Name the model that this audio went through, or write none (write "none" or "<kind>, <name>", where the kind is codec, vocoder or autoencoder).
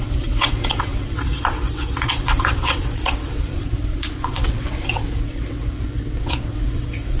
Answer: vocoder, WaveNeXt